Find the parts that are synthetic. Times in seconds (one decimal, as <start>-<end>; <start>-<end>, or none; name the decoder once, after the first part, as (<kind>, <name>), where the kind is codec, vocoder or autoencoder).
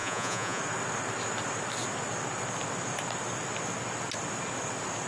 0.0-0.6 (vocoder, Vocos)